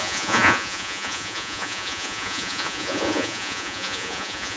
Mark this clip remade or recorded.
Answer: remade